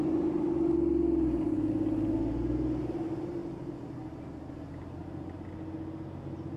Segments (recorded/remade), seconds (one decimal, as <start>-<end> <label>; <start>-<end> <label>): 0.0-6.6 recorded